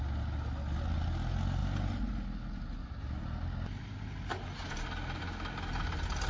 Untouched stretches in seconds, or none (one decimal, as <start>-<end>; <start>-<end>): 0.0-6.3